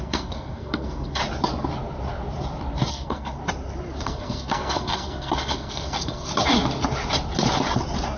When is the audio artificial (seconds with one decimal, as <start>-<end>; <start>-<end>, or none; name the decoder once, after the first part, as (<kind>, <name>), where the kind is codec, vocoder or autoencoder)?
0.0-1.2 (codec, SNAC); 2.9-3.4; 4.0-6.3